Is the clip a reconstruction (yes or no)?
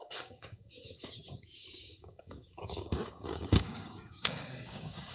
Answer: yes